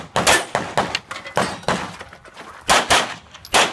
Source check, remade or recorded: recorded